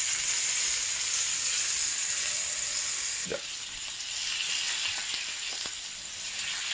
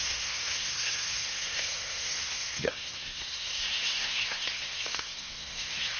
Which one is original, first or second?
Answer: first